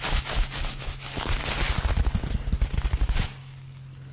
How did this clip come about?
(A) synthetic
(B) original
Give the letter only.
B